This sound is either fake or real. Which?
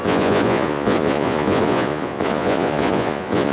fake